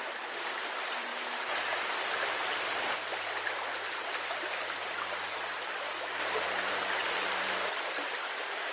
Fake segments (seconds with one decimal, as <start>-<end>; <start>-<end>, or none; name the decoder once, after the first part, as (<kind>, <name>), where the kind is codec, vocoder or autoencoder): 0.0-1.1 (vocoder, BigVGAN v2); 2.0-8.7